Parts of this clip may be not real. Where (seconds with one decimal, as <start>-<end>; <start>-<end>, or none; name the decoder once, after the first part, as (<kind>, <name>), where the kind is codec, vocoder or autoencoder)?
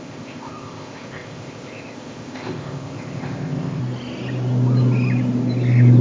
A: 0.0-3.8 (codec, ZipCodec)